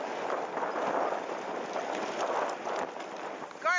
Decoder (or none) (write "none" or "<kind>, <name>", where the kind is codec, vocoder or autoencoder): none